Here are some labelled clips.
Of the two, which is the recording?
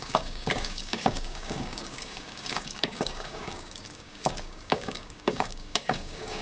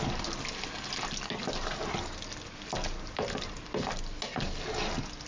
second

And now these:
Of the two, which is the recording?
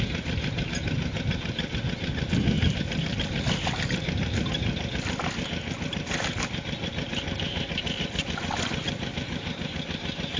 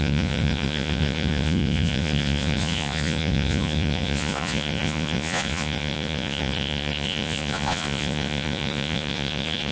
first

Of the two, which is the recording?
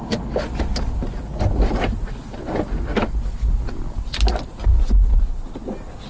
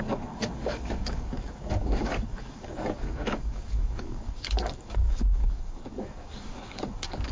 first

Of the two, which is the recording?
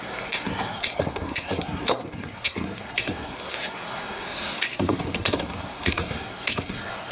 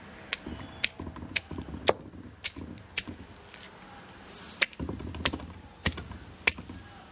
second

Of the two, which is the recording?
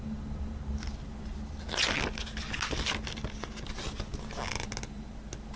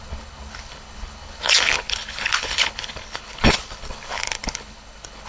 first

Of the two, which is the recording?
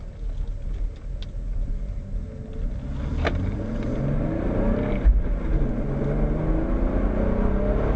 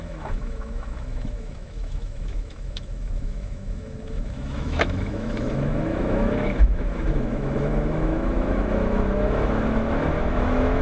first